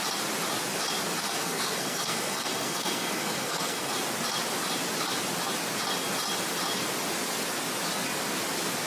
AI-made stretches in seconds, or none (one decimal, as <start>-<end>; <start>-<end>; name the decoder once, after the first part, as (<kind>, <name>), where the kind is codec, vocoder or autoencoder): 1.2-3.9 (codec, SNAC)